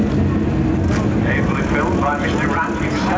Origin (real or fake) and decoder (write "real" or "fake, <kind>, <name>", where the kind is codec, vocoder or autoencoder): real